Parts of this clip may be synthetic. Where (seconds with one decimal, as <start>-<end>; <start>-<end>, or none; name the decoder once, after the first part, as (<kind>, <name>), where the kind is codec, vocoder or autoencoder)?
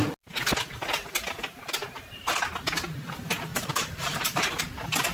3.5-4.6 (vocoder, BigVGAN v2)